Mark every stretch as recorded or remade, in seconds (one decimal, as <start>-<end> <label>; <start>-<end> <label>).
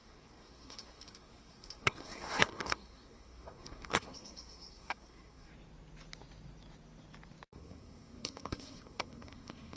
0.0-5.5 remade; 5.5-7.5 recorded; 7.5-9.8 remade